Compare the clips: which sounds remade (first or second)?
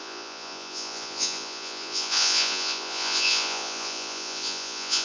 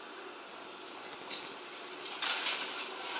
first